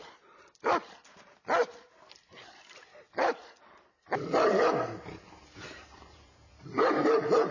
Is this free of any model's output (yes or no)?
no